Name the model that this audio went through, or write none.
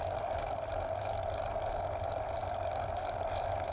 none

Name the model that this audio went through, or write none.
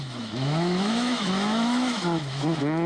autoencoder, DAC-VAE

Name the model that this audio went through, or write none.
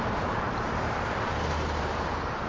vocoder, BigVGAN v2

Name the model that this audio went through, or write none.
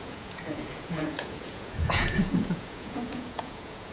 vocoder, Vocos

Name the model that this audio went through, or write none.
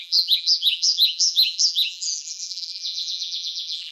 vocoder, BigVGAN v2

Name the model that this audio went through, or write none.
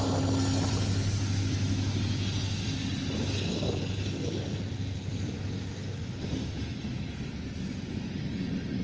none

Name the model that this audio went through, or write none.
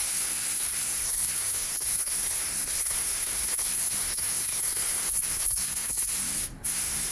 codec, SNAC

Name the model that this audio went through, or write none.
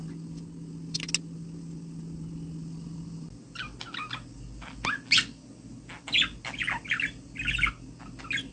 none